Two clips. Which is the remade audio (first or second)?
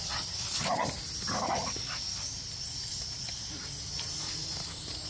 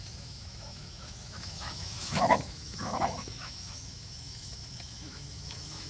second